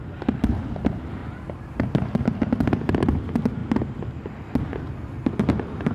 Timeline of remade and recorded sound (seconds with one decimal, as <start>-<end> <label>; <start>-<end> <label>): 0.0-1.2 recorded; 1.2-2.5 remade; 2.5-5.9 recorded